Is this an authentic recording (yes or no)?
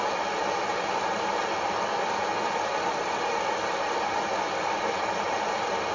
no